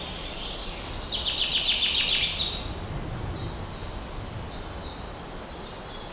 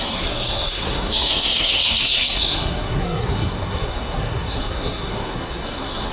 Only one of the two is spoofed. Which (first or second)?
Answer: second